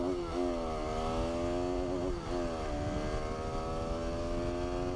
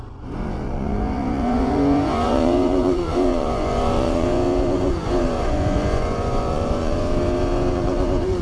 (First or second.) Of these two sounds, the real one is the first